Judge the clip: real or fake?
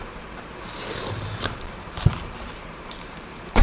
fake